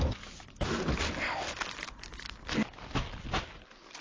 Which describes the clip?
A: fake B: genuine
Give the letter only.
B